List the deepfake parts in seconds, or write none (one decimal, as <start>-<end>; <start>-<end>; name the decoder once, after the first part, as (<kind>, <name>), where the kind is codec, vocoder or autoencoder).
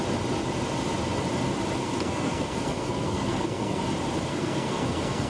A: 1.8-3.8 (codec, SNAC); 4.3-5.3